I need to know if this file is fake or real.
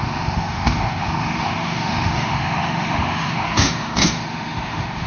fake